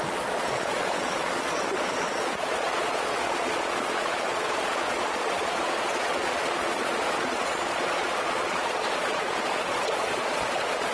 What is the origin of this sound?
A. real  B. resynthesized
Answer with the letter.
B